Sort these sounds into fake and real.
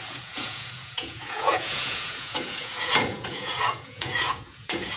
fake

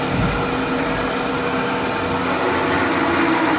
real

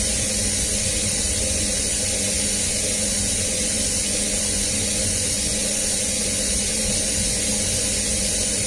fake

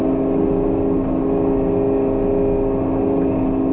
real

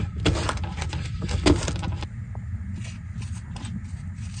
real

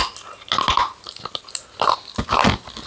real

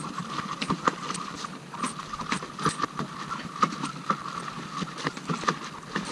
real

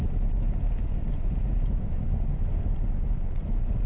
real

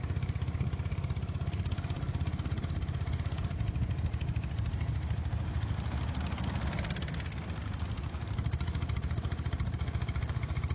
real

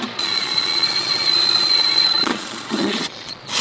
fake